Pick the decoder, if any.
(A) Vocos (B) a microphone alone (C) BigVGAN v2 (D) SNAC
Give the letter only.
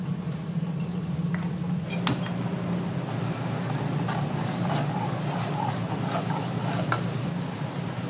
B